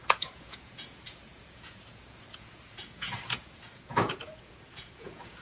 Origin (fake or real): fake